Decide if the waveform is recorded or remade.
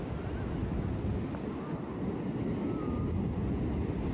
recorded